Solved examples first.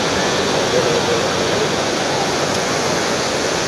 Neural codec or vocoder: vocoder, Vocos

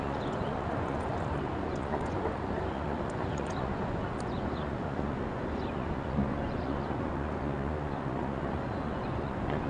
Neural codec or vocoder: vocoder, Vocos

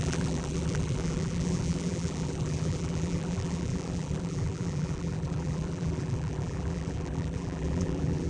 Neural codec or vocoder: vocoder, BigVGAN v2